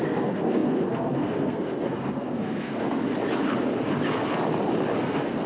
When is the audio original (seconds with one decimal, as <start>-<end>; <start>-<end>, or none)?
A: 2.8-5.0